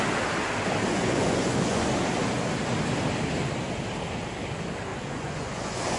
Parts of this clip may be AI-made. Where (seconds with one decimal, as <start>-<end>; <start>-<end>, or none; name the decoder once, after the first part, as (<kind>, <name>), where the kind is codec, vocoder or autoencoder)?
0.9-1.8 (vocoder, Vocos); 4.9-6.0